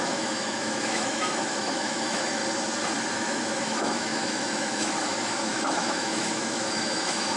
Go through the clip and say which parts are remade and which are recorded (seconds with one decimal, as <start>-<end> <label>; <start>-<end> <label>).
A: 0.0-2.4 remade; 2.4-3.1 recorded; 3.1-7.4 remade